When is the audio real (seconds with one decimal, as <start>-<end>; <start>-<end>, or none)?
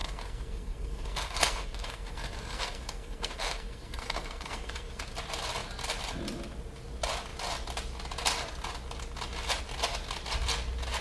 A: 5.0-11.0